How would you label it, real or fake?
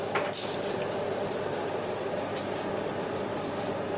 real